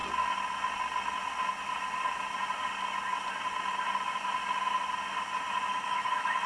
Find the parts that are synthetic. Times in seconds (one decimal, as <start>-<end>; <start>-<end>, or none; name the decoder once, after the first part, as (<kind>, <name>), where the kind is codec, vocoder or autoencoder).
5.7-6.5 (autoencoder, DAC-VAE)